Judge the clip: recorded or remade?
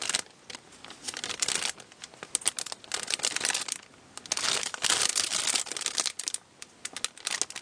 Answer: recorded